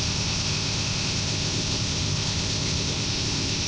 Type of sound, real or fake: fake